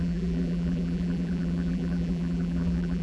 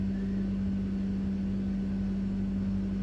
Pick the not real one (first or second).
first